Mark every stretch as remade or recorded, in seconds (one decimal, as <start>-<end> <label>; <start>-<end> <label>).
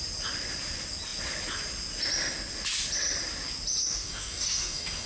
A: 0.0-3.8 recorded; 3.8-5.1 remade